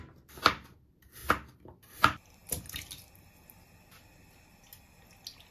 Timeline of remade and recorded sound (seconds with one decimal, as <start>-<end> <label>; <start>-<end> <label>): 0.0-5.5 recorded